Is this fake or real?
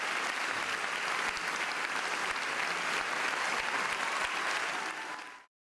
real